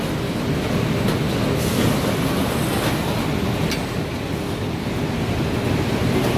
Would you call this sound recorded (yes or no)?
yes